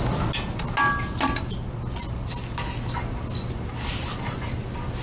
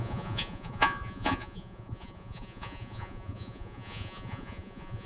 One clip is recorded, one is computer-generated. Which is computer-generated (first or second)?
second